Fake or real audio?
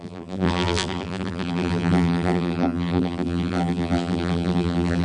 fake